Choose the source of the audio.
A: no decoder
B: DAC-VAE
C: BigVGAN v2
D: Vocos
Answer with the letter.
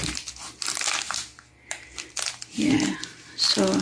A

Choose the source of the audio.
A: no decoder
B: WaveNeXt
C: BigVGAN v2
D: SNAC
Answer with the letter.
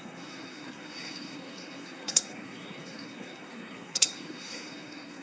D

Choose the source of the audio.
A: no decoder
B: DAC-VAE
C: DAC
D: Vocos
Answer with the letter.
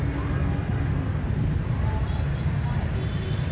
A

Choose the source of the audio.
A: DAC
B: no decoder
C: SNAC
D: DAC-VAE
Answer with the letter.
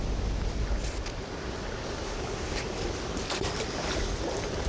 B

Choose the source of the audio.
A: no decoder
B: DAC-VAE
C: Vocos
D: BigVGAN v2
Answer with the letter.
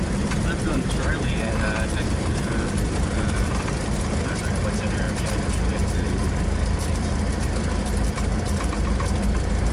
D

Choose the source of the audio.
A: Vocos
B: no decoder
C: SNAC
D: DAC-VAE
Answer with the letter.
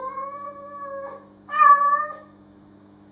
D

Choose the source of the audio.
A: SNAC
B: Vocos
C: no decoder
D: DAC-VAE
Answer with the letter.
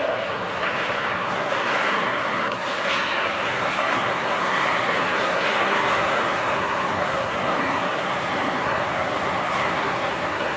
A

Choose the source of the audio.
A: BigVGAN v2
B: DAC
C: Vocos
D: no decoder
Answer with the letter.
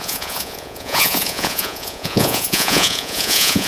C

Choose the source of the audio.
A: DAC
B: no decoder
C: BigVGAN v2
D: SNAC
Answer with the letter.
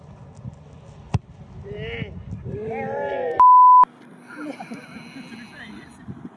B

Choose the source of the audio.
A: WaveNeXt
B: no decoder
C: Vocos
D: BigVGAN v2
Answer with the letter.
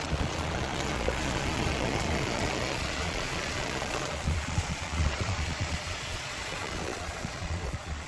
C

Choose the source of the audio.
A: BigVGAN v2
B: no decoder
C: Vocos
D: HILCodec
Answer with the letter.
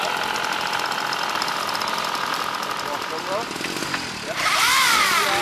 A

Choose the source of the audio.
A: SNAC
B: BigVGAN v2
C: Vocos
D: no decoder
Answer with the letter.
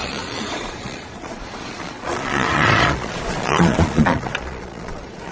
C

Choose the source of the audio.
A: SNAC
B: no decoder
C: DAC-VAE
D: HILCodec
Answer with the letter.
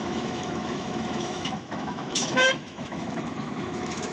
C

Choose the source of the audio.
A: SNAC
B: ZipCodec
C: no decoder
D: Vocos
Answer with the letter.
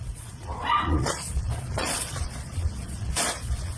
D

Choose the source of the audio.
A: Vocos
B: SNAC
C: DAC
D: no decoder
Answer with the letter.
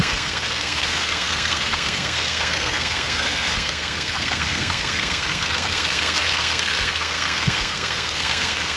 B